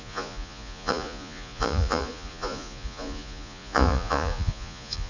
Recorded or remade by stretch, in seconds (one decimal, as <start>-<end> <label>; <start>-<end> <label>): 0.0-5.1 remade